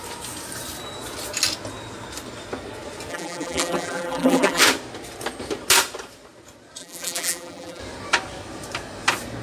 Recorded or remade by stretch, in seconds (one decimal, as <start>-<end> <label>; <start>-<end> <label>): 0.0-3.1 recorded; 3.1-4.6 remade; 4.6-6.8 recorded; 6.8-7.8 remade; 7.8-9.4 recorded